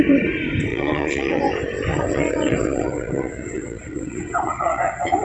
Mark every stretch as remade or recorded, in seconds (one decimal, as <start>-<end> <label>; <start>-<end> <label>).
0.0-0.7 recorded; 0.7-1.4 remade; 1.4-1.9 recorded; 1.9-5.2 remade